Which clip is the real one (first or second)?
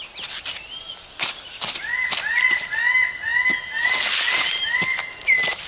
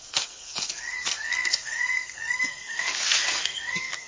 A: first